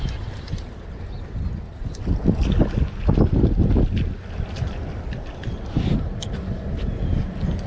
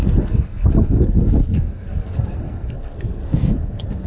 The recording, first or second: first